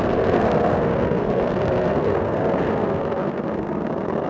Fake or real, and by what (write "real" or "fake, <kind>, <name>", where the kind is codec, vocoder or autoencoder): fake, codec, SNAC